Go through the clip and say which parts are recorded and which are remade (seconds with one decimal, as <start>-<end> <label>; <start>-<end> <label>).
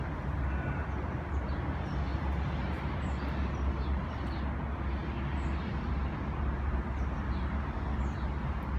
0.0-8.8 recorded